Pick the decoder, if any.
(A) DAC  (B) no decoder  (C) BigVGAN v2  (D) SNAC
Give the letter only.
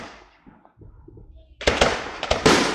B